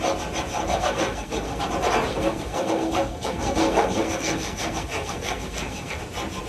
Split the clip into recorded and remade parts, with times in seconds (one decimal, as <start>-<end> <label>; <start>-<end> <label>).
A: 0.0-0.6 recorded; 0.6-1.7 remade; 1.7-2.1 recorded; 2.1-6.0 remade; 6.0-6.5 recorded